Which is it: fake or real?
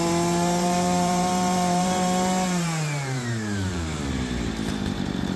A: fake